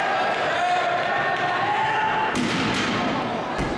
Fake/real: real